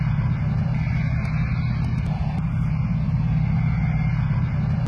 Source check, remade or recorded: recorded